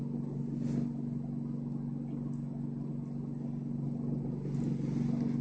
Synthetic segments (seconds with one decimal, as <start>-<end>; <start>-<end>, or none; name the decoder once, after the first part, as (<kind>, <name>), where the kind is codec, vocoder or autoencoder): none

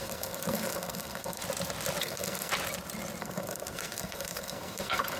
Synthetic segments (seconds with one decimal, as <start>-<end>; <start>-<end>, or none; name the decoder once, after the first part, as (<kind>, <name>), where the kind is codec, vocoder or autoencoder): 0.0-1.4 (codec, SNAC); 2.0-2.5; 3.2-5.2